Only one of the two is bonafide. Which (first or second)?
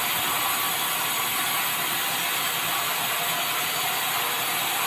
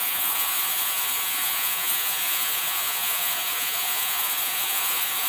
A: first